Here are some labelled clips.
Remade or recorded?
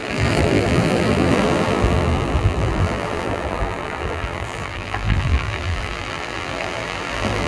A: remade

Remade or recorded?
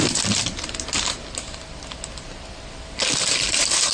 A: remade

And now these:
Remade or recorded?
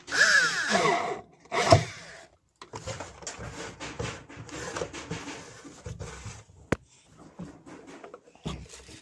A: recorded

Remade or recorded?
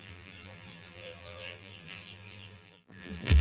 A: remade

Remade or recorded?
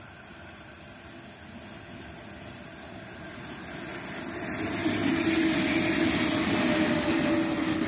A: recorded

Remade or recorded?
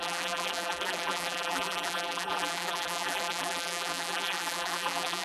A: remade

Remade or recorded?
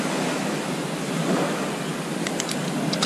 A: recorded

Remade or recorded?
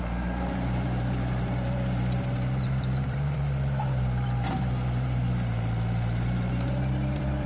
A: remade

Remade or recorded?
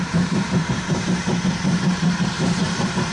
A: remade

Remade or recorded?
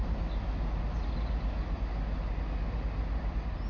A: recorded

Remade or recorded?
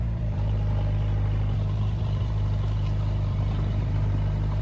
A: remade